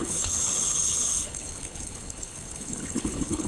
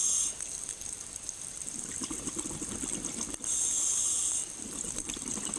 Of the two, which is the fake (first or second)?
first